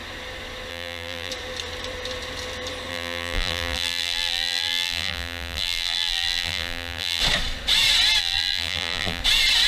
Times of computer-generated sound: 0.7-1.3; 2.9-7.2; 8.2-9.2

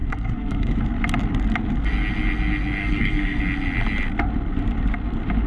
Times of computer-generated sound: 0.0-0.8; 2.8-3.4

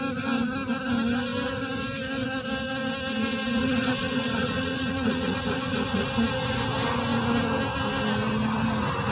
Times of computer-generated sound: 3.6-6.1

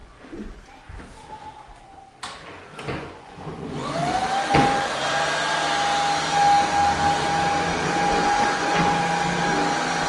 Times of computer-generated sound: 0.0-0.6; 2.6-3.9; 8.2-9.0

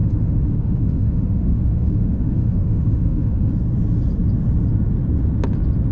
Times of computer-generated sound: 0.0-3.5

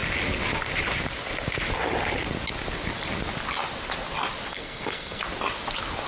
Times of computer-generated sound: 4.5-5.2

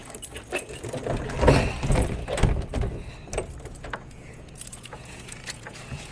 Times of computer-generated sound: 3.7-6.1